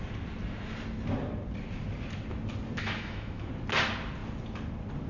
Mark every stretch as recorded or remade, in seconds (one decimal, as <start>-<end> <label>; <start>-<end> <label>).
0.0-2.8 recorded; 2.8-3.5 remade; 3.5-5.1 recorded